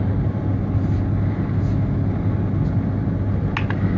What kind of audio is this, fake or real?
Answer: real